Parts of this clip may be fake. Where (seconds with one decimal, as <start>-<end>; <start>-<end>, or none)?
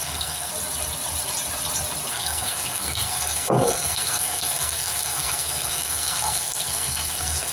0.0-0.5; 2.1-7.5